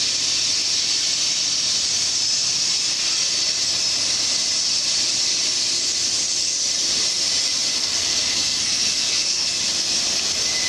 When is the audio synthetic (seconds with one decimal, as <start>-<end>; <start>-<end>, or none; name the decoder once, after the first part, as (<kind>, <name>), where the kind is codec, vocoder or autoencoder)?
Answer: 7.8-9.6 (codec, SNAC)